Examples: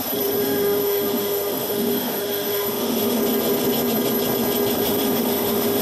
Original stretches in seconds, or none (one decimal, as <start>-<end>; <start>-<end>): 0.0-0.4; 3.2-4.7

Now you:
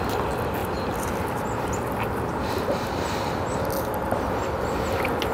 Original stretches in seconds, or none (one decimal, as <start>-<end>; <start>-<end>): 0.0-5.3

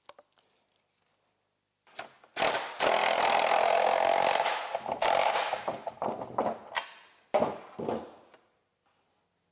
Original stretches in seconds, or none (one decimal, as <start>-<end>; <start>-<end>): 0.0-9.5

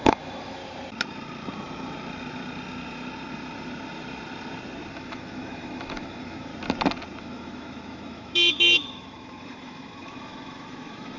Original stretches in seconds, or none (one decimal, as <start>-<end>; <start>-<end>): 0.6-4.9; 6.5-7.2

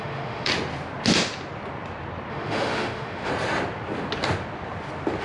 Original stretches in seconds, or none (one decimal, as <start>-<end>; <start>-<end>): 0.5-2.3; 3.3-5.2

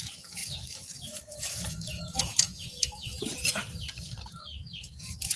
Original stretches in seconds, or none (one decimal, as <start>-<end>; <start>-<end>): 3.3-4.3